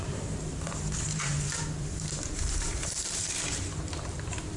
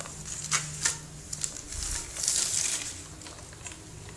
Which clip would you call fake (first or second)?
first